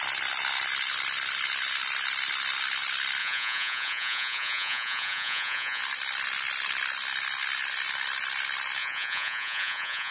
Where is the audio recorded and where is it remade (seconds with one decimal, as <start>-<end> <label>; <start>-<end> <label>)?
0.0-3.2 recorded; 3.2-5.8 remade; 5.8-8.8 recorded; 8.8-10.1 remade